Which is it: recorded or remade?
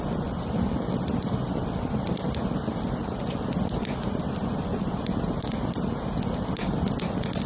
recorded